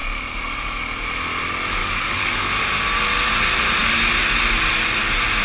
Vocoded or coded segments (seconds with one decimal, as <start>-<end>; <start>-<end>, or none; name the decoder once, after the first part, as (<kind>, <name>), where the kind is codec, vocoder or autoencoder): 1.8-2.5 (codec, DAC)

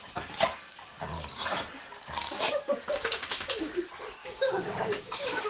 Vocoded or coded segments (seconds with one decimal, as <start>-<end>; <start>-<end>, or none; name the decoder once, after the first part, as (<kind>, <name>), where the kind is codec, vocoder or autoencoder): 2.2-3.7 (codec, DAC); 4.2-5.5

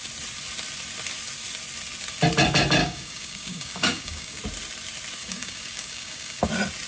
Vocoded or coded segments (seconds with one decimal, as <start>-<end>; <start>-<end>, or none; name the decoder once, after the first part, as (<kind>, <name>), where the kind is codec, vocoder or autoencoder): 2.8-4.4 (codec, DAC); 5.2-6.5

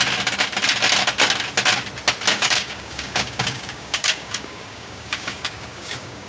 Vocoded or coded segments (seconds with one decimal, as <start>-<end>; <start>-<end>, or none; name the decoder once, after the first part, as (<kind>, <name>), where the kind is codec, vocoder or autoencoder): 2.3-6.3 (codec, DAC)

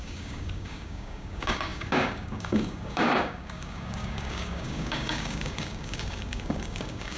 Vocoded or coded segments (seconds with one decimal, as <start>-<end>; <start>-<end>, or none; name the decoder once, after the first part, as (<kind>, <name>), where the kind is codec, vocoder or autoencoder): 0.0-7.2 (codec, DAC)

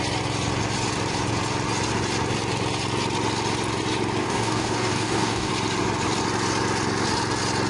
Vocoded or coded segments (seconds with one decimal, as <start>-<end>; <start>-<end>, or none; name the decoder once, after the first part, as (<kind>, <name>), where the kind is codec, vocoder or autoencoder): 4.2-5.5 (codec, DAC)

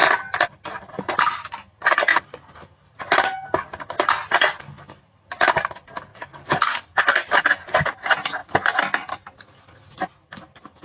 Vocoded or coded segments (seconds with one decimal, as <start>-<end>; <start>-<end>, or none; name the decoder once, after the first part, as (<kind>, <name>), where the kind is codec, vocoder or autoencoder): 6.1-7.0 (codec, DAC)

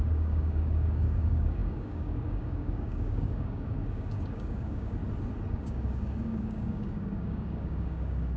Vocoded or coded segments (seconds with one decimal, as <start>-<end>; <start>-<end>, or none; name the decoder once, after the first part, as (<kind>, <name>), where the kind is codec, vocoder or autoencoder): 0.0-5.0 (codec, DAC); 5.5-8.4